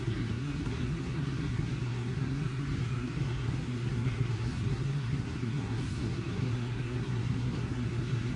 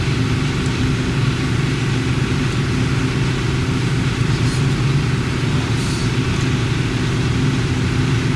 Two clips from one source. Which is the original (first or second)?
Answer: second